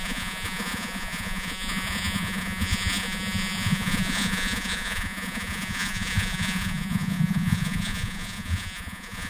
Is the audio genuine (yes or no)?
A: no